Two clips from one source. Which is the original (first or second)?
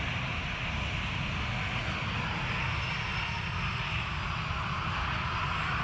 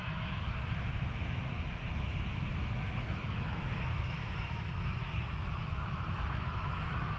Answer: first